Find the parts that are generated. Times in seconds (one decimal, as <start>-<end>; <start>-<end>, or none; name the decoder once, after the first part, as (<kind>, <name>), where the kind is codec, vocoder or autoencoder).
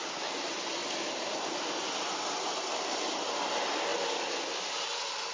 none